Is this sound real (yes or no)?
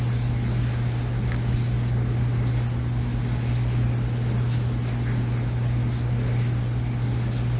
yes